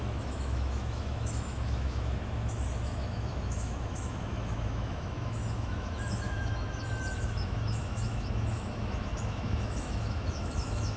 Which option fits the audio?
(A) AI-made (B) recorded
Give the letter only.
A